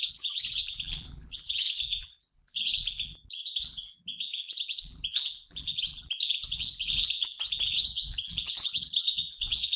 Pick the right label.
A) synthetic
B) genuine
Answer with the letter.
A